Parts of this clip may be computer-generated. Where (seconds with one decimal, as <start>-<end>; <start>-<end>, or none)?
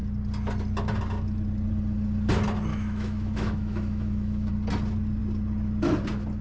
2.7-4.5